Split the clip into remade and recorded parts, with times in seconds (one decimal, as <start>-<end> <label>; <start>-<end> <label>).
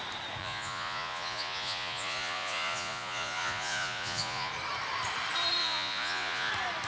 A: 0.0-0.4 recorded; 0.4-4.5 remade; 4.5-5.6 recorded; 5.6-6.5 remade; 6.5-6.9 recorded